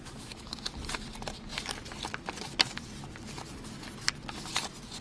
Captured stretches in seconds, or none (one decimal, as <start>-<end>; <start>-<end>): 0.6-5.0